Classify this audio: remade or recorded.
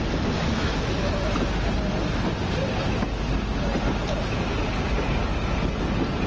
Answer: recorded